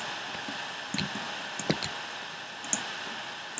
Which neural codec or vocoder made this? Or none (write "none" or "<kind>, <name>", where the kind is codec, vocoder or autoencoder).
none